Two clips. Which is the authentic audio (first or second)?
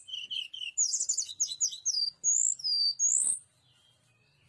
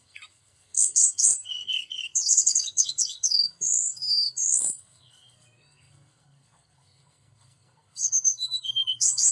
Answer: first